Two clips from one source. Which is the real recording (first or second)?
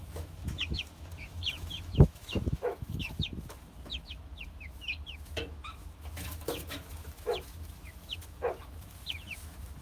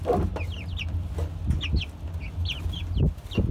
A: second